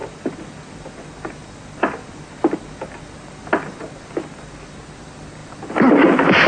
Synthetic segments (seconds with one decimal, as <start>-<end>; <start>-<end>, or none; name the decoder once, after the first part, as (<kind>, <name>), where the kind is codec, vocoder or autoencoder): none